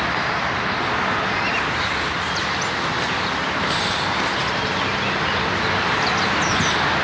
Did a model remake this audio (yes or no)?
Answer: no